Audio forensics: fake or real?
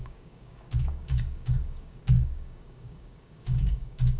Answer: fake